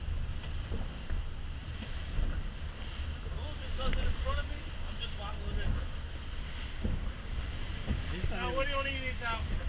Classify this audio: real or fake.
real